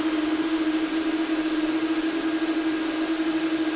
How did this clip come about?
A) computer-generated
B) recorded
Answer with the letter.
B